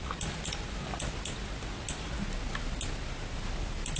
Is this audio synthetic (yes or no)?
no